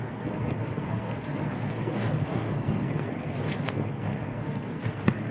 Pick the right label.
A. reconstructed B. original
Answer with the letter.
A